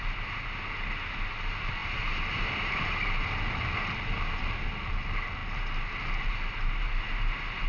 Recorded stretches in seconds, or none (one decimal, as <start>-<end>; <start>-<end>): 0.0-7.7